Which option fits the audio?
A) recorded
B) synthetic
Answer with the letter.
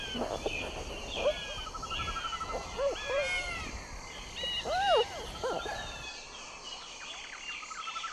A